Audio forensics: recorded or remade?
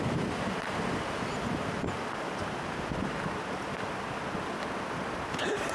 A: recorded